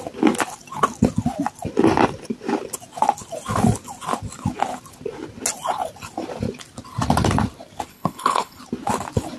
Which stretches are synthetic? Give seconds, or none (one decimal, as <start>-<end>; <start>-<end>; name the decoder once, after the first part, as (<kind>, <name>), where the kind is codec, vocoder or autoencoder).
7.9-8.6 (codec, HILCodec)